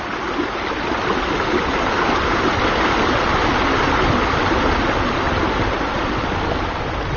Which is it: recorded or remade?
recorded